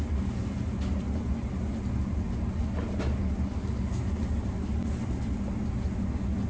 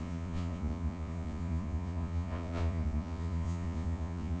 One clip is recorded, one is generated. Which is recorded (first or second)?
first